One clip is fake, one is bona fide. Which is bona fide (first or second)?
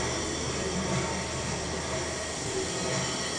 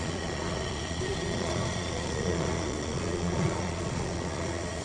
first